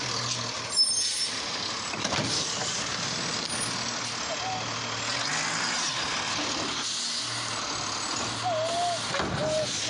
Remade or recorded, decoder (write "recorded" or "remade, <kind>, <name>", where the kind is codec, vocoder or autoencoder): recorded